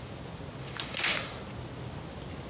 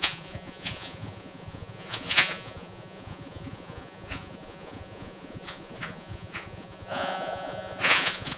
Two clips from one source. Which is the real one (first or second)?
first